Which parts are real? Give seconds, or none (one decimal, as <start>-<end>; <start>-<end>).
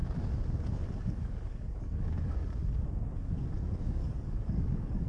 0.0-1.0; 2.4-3.8